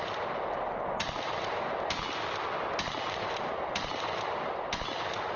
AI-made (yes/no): no